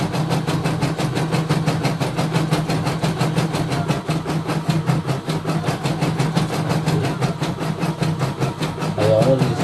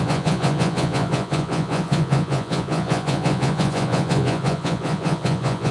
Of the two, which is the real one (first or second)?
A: first